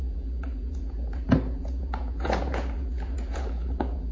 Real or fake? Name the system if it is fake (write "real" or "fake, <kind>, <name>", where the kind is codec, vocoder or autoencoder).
fake, vocoder, Vocos